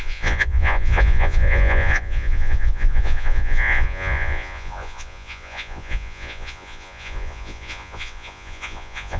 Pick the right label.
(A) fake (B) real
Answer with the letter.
A